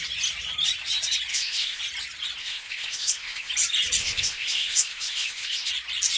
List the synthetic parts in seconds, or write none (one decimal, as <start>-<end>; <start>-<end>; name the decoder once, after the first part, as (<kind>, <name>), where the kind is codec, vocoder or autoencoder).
1.3-1.8 (codec, ZipCodec); 2.4-3.5; 4.0-5.7